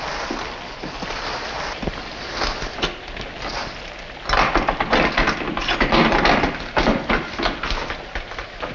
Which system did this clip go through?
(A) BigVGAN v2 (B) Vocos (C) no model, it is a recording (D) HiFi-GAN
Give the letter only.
C